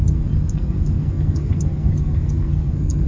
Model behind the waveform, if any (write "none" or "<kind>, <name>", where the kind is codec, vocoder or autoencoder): codec, SNAC